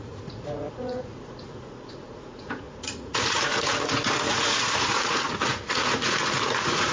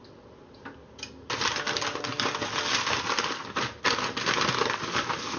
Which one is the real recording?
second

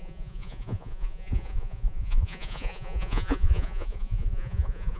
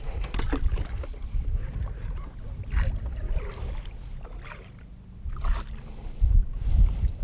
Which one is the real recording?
second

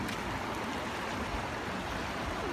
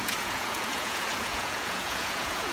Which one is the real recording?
first